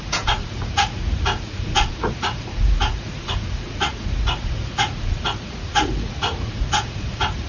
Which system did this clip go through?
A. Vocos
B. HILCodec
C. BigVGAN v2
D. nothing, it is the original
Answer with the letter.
A